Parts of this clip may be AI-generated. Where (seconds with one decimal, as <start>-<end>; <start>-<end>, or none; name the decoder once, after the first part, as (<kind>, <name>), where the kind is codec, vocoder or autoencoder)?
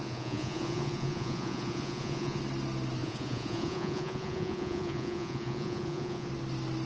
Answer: 0.0-2.4 (vocoder, Vocos); 3.0-6.3